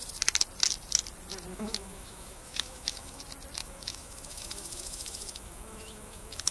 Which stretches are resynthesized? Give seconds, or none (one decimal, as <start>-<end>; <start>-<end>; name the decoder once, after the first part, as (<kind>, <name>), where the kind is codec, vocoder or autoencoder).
1.5-3.2 (autoencoder, DAC-VAE); 3.6-6.5